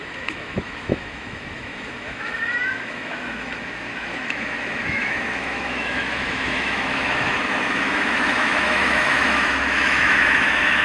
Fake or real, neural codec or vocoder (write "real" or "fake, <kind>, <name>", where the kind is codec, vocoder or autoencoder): fake, autoencoder, DAC-VAE